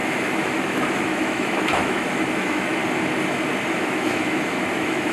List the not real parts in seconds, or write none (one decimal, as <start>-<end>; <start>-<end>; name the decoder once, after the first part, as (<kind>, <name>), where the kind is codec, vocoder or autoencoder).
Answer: 0.0-2.8 (autoencoder, DAC-VAE); 3.7-5.1